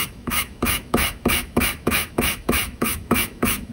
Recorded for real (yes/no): no